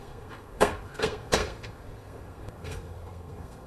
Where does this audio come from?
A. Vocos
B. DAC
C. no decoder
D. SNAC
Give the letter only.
D